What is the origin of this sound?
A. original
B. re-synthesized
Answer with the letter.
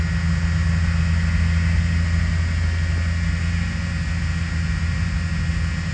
A